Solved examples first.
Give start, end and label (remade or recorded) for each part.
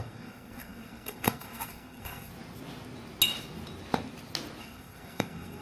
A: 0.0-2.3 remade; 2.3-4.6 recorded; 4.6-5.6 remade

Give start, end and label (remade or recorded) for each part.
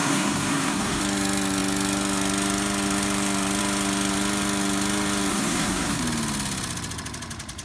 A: 0.0-1.0 remade; 1.0-5.3 recorded; 5.3-6.0 remade; 6.0-7.6 recorded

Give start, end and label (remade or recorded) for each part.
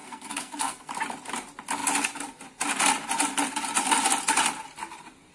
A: 0.0-0.9 remade; 0.9-5.3 recorded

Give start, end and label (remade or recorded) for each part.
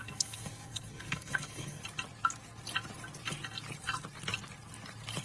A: 0.0-1.8 remade; 1.8-5.2 recorded